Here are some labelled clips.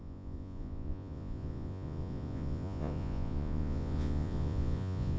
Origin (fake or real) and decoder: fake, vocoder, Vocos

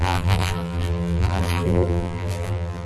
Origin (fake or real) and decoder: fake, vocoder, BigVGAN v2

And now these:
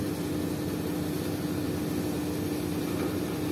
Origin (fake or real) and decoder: real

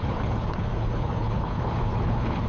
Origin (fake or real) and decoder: fake, codec, HILCodec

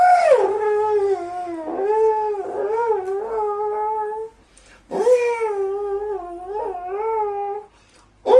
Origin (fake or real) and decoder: real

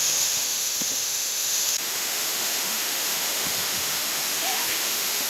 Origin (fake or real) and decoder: fake, autoencoder, DAC-VAE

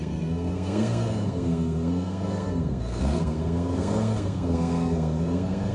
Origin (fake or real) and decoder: fake, codec, SNAC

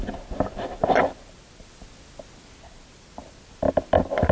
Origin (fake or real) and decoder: real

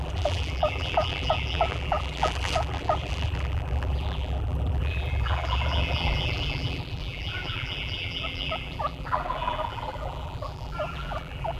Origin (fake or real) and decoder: fake, vocoder, BigVGAN v2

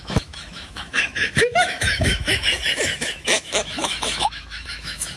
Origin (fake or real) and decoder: fake, autoencoder, DAC-VAE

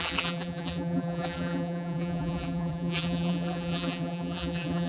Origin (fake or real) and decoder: fake, vocoder, BigVGAN v2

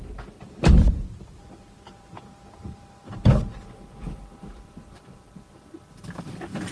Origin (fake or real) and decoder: fake, vocoder, BigVGAN v2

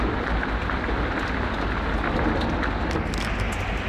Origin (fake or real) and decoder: real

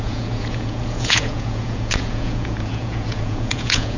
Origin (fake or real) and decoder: fake, vocoder, Vocos